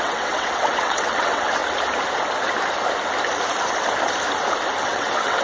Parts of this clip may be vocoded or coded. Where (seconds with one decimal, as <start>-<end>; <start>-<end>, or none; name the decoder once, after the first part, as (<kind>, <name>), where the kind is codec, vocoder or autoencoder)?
0.0-1.6 (vocoder, WaveNeXt); 4.8-5.4